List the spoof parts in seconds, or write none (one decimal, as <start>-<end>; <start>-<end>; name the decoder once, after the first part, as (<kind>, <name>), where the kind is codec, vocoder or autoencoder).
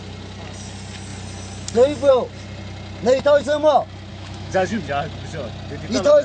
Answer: 4.1-4.8 (autoencoder, DAC-VAE)